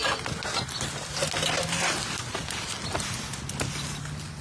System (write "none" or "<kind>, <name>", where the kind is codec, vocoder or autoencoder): none